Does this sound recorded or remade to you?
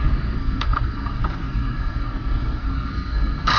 remade